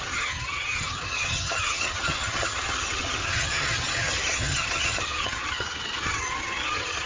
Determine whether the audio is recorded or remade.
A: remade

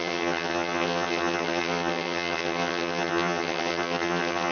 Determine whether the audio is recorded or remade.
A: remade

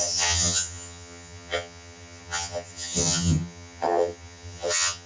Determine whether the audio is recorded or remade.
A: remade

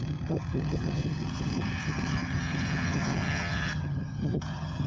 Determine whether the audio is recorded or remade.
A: remade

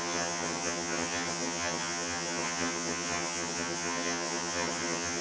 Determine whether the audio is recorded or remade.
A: remade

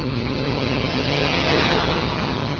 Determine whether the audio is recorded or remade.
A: remade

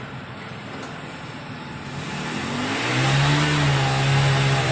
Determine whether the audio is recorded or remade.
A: recorded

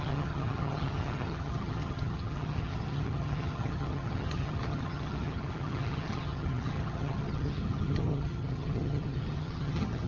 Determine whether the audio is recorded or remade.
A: remade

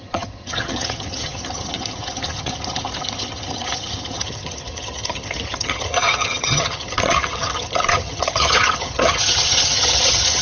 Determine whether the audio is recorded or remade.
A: remade